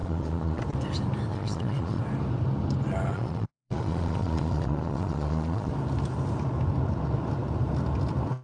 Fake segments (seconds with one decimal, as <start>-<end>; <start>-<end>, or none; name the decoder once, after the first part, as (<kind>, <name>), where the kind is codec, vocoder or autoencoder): 0.0-0.6 (vocoder, Vocos); 1.3-2.0; 3.1-5.7